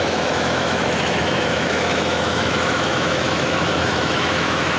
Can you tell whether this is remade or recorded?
remade